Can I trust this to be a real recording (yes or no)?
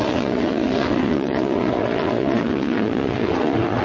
no